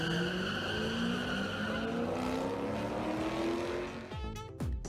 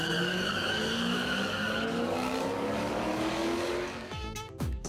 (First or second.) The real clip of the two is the first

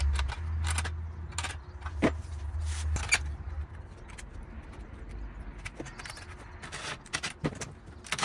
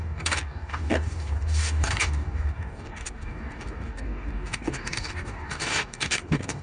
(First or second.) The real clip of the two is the first